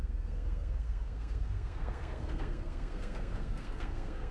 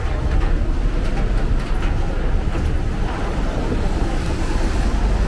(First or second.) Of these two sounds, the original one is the second